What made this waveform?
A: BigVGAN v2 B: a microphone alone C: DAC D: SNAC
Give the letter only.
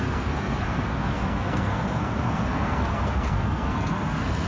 D